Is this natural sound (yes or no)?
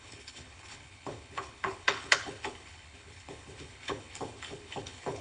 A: no